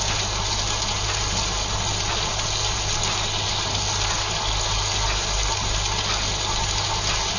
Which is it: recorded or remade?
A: recorded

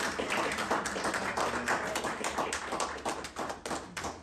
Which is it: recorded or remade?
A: recorded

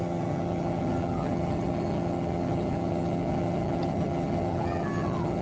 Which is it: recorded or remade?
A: remade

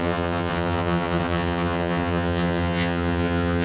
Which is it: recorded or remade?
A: remade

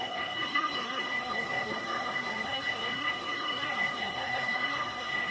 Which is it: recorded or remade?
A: remade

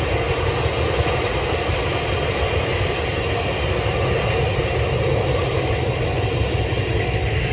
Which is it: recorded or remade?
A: recorded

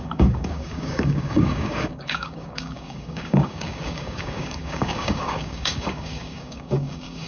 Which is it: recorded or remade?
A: remade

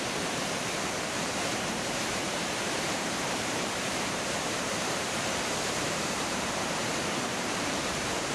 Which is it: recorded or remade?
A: remade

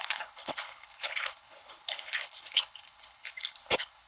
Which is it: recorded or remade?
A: remade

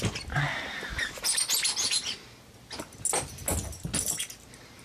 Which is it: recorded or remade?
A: recorded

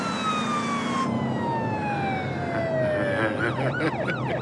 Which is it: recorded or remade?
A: recorded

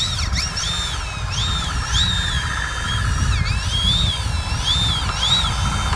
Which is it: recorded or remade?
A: recorded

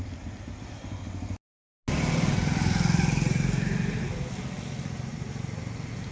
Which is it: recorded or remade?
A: recorded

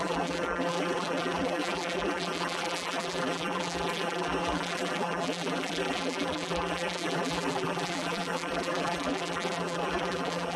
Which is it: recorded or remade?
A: remade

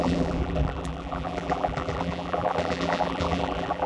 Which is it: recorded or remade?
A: remade